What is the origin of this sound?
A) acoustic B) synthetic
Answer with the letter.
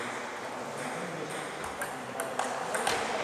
A